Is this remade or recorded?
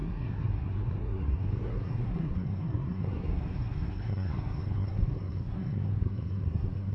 remade